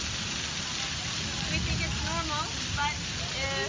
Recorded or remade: recorded